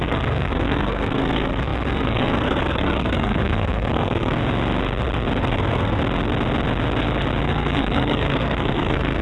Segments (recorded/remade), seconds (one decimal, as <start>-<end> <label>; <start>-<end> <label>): 0.0-4.4 remade; 4.4-5.4 recorded; 5.4-6.0 remade; 6.0-7.4 recorded; 7.4-9.2 remade